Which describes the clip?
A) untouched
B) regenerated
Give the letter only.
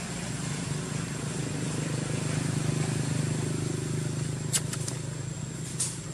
A